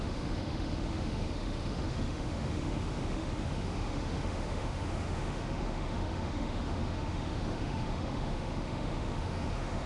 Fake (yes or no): yes